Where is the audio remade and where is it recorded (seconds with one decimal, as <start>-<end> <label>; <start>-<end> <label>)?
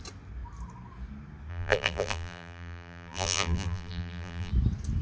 0.0-1.5 recorded; 1.5-4.5 remade; 4.5-5.0 recorded